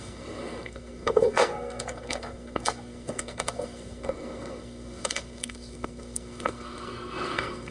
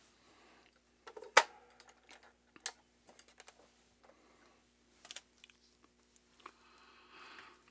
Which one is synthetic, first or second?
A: first